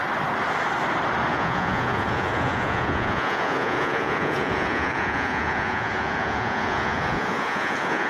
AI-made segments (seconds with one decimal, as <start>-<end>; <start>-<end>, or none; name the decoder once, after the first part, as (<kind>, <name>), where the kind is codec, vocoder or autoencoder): 1.3-8.1 (vocoder, Vocos)